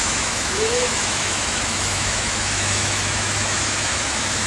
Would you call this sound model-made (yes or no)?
yes